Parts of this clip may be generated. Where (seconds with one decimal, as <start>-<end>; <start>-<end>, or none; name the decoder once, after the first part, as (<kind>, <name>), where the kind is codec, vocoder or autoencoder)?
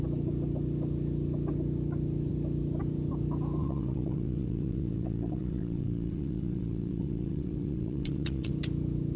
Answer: 3.6-8.5 (vocoder, WaveNeXt)